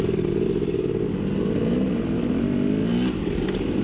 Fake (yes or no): no